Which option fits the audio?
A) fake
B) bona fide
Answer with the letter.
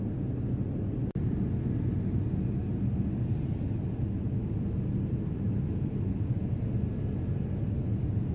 B